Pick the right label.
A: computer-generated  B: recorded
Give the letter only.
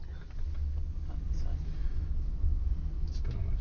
B